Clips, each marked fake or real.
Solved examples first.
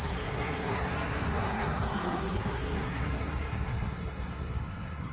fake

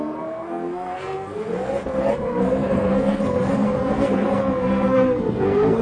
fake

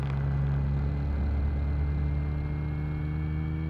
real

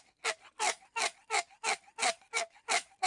real